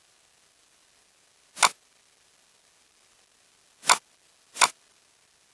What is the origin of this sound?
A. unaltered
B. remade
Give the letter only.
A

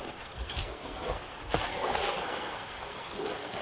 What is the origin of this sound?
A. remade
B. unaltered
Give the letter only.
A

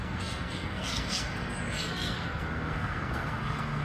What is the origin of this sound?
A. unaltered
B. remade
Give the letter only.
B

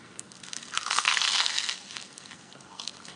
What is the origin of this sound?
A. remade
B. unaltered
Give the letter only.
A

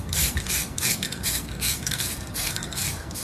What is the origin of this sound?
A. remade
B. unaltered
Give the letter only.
A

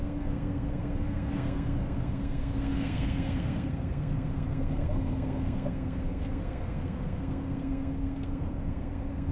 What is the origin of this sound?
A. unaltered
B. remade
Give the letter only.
B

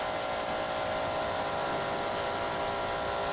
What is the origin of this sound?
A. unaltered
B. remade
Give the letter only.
A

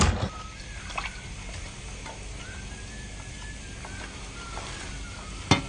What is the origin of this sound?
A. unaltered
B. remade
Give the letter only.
A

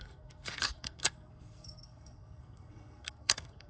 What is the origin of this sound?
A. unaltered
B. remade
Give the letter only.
B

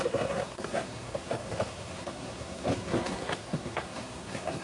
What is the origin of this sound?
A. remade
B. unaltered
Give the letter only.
A